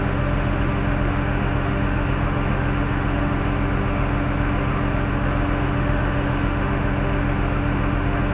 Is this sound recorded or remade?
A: remade